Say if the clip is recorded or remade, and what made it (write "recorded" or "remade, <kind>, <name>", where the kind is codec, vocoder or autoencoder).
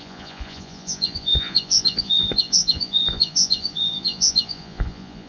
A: remade, vocoder, Vocos